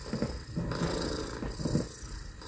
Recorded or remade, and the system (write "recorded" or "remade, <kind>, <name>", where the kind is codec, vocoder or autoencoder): recorded